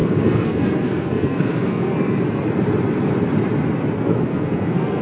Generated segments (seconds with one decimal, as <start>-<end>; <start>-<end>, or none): 0.0-2.4; 4.0-5.0